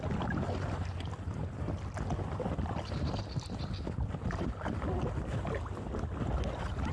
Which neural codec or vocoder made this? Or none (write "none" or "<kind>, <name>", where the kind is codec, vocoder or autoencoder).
none